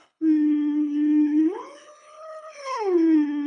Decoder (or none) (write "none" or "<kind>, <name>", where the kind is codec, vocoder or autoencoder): codec, HILCodec